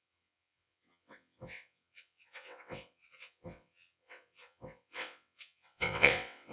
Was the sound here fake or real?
fake